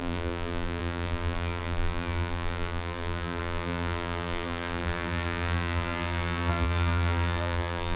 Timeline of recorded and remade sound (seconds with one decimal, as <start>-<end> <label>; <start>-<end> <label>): 0.0-8.0 remade